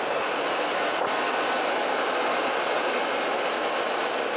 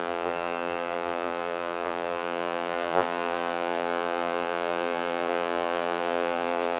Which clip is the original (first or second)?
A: first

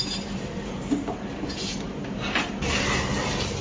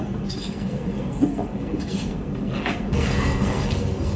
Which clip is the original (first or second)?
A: first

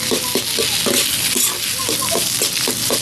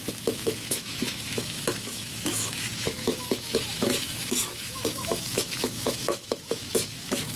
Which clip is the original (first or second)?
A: first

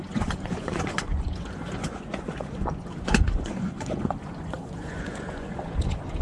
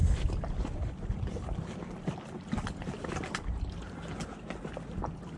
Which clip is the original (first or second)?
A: second